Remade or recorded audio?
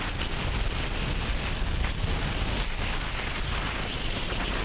recorded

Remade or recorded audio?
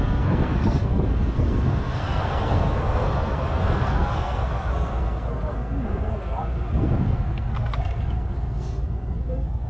remade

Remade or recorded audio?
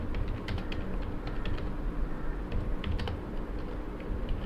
recorded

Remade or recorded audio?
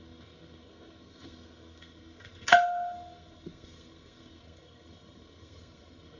remade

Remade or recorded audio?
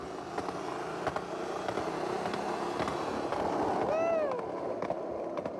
recorded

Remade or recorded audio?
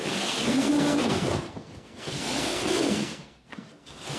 remade